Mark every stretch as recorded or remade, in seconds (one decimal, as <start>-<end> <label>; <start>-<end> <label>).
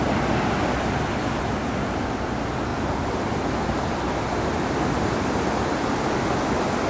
0.0-2.7 recorded; 2.7-4.6 remade; 4.6-6.9 recorded